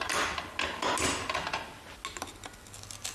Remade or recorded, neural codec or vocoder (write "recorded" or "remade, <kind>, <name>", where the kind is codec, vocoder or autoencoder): recorded